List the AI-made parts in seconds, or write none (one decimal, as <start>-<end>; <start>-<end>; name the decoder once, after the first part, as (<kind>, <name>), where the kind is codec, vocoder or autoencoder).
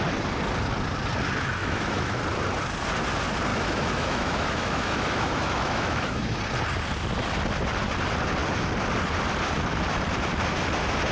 1.6-2.2 (autoencoder, DAC-VAE); 3.5-6.4